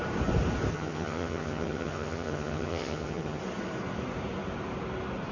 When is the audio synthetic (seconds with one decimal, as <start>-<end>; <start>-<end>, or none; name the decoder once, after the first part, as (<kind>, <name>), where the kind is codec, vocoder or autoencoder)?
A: 0.7-3.4 (vocoder, HiFi-GAN)